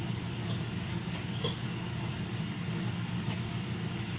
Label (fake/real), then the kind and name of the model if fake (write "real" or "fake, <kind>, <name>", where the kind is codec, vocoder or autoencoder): fake, codec, DAC